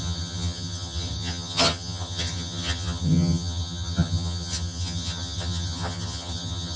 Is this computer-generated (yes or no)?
yes